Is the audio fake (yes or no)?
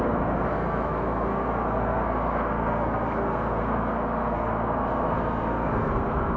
yes